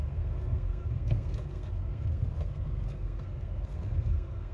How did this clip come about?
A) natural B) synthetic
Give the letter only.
B